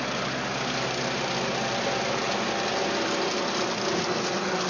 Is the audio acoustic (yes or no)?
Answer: yes